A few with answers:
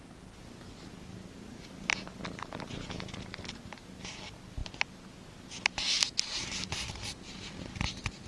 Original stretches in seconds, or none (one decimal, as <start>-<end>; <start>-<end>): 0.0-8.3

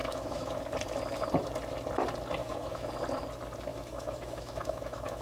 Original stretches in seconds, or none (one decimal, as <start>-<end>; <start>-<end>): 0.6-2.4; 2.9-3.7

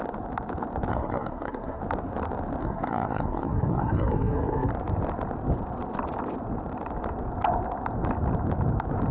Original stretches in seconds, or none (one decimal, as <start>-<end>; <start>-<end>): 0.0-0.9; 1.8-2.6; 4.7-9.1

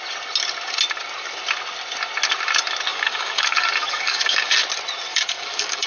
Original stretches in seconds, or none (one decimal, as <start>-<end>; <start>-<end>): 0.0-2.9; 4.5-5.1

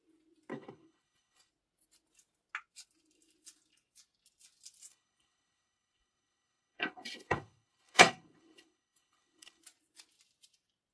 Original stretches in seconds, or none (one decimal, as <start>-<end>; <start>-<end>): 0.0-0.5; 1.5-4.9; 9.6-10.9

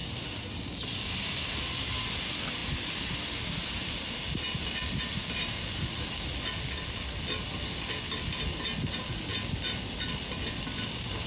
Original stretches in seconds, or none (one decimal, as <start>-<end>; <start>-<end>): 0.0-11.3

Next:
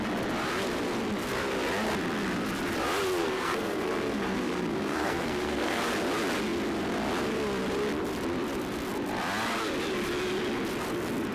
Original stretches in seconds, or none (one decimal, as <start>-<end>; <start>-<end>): 0.0-3.2; 5.8-11.3

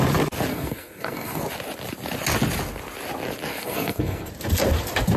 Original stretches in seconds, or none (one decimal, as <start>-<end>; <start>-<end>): 0.0-0.5; 1.4-3.5; 4.3-5.2